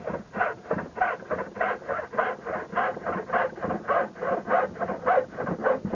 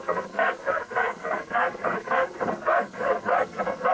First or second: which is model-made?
second